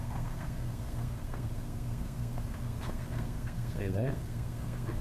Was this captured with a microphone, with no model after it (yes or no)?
no